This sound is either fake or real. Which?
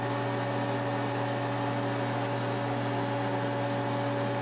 real